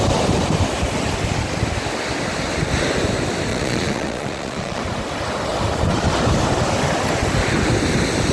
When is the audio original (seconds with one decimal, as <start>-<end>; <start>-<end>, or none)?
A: 0.0-3.5; 4.8-8.3